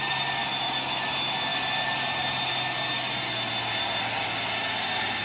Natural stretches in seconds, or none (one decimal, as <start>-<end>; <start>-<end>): 0.0-5.2